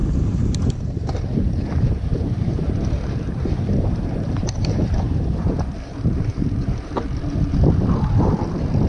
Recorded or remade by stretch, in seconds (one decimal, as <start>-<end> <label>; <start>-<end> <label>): 0.0-0.7 remade; 0.7-1.7 recorded; 1.7-6.9 remade; 6.9-8.9 recorded